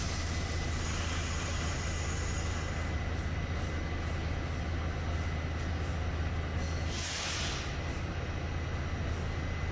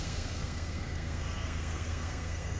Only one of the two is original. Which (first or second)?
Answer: first